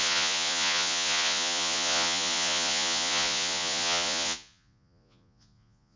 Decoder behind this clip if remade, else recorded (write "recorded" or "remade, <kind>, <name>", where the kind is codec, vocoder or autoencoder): remade, vocoder, Vocos